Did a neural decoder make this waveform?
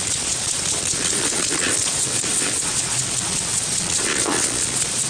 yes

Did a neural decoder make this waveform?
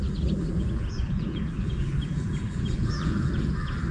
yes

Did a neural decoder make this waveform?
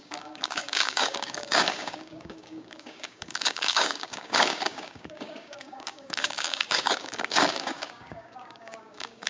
yes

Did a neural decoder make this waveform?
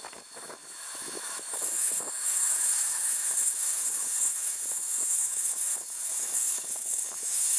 yes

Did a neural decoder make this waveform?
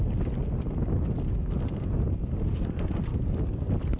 no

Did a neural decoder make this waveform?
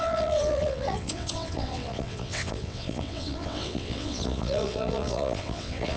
yes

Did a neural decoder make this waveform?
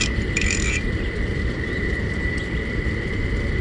yes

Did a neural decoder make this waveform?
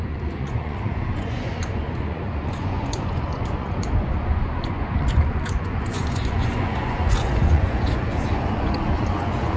yes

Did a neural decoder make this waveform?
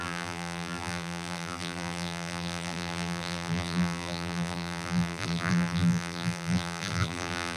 yes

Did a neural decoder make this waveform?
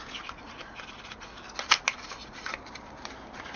no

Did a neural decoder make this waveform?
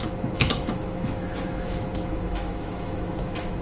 yes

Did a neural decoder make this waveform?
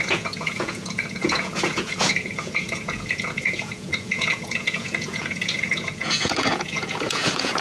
yes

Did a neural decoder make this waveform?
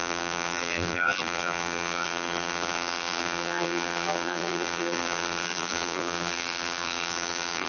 yes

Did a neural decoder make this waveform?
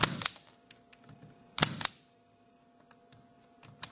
no